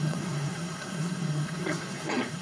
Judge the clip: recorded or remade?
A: remade